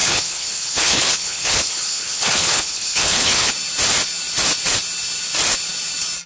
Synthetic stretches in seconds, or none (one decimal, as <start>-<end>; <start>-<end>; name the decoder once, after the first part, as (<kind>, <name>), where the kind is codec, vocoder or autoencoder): 0.0-3.5 (codec, HILCodec)